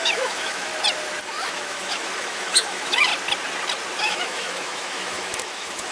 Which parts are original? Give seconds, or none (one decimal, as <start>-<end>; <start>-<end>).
0.7-1.2; 3.1-4.0

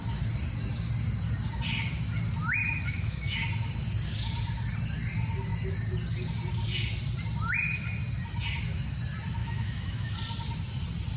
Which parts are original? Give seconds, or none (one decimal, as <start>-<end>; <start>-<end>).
0.0-2.6; 3.4-9.4; 10.1-11.2